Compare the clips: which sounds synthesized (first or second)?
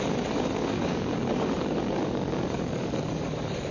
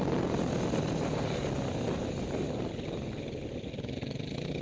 first